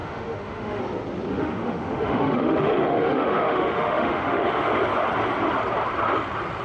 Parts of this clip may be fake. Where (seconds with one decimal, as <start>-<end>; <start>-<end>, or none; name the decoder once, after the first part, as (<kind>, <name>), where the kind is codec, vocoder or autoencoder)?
0.0-0.8 (autoencoder, DAC-VAE); 1.3-4.7